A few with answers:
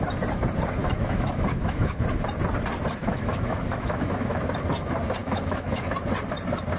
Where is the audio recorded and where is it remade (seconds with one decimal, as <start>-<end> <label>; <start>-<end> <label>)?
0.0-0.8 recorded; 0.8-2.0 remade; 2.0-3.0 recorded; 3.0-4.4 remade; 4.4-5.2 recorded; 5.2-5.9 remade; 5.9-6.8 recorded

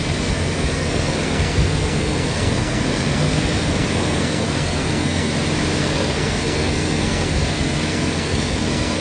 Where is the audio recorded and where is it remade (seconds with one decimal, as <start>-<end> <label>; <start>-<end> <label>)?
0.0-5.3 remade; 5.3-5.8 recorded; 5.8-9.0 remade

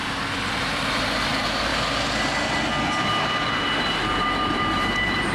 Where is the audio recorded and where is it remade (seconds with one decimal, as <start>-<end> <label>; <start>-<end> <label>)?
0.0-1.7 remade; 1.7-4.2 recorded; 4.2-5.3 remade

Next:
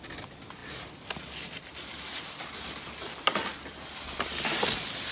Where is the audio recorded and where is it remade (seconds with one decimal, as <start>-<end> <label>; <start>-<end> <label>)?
0.0-5.1 recorded

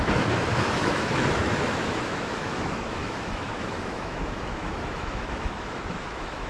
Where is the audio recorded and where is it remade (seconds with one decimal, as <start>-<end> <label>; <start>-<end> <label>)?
0.0-6.5 remade

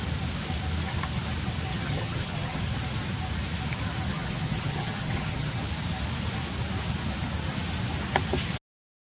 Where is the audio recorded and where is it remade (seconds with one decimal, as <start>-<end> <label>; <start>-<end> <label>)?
0.0-1.7 recorded; 1.7-2.6 remade; 2.6-4.1 recorded; 4.1-5.6 remade; 5.6-9.1 recorded

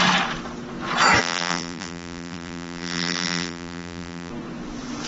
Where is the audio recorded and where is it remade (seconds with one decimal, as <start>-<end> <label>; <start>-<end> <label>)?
0.0-1.2 recorded; 1.2-4.3 remade; 4.3-5.1 recorded

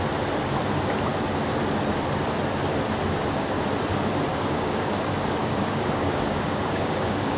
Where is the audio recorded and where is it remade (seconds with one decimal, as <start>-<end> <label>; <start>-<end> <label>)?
0.0-4.3 recorded; 4.3-4.9 remade; 4.9-5.4 recorded; 5.4-7.4 remade